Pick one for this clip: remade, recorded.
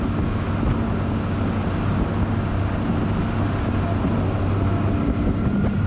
recorded